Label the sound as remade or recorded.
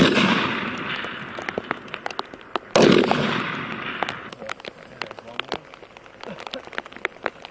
recorded